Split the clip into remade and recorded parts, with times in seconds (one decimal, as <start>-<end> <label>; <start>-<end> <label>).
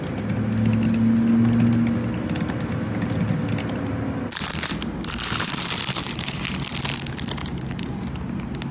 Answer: 0.0-5.9 recorded; 5.9-6.4 remade; 6.4-7.4 recorded; 7.4-7.9 remade; 7.9-8.7 recorded